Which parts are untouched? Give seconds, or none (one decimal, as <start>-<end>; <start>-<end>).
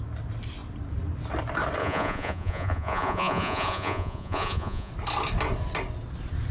0.0-1.8; 4.9-6.5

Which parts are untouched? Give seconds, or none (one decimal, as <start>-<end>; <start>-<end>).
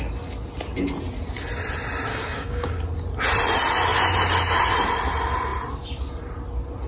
0.0-2.1; 2.7-6.9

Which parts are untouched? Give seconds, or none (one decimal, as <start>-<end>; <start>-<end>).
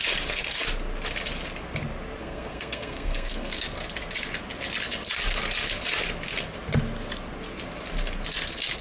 0.0-2.2; 3.6-8.8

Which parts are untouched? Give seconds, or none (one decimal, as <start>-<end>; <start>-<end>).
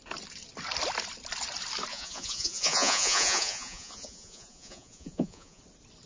0.0-1.9; 5.6-6.1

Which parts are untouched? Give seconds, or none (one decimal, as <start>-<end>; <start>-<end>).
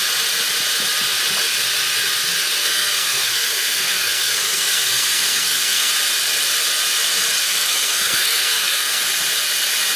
0.0-2.6; 5.9-7.4; 9.0-10.0